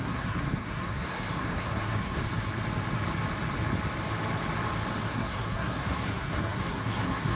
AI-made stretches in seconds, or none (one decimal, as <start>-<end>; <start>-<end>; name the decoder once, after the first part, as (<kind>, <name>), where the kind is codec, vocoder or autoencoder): 0.0-2.2 (codec, SNAC); 5.1-7.4